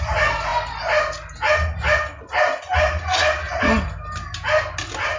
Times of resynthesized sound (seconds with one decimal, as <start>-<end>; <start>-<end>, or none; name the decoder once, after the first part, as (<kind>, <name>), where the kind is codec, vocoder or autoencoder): none